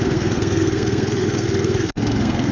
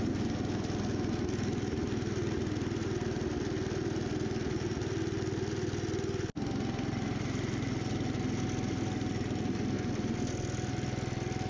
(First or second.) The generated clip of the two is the first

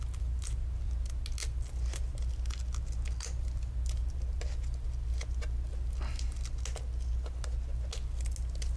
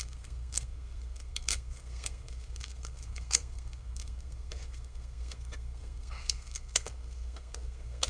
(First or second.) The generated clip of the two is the second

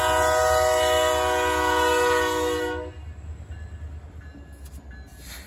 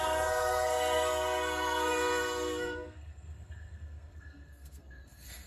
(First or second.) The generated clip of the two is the second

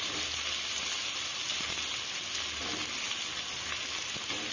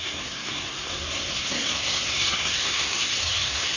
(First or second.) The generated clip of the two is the second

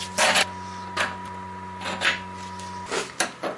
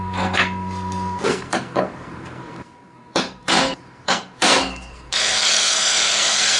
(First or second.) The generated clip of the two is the second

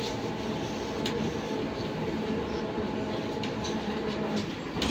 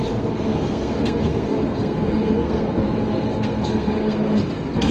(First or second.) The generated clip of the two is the second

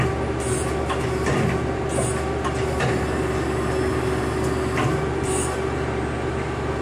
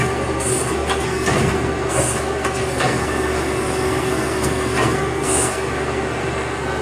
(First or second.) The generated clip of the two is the second